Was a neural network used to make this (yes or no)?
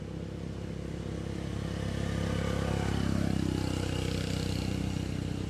no